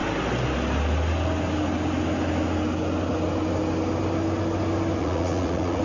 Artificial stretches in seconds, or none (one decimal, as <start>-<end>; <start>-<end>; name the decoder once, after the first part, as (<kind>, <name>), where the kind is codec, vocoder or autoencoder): 5.0-5.8 (vocoder, Vocos)